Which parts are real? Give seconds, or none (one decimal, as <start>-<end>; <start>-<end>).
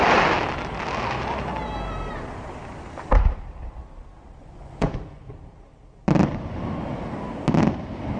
0.0-4.4; 5.2-8.2